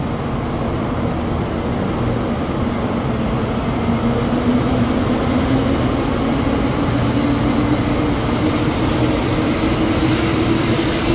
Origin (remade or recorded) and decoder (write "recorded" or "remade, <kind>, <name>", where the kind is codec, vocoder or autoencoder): recorded